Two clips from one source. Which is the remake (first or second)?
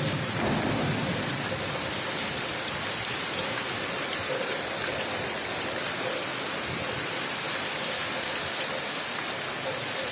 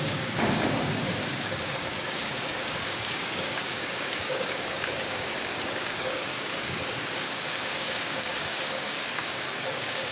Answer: second